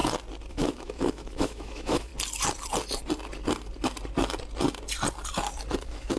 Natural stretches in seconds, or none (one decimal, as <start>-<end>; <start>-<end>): 0.0-0.5; 2.1-5.8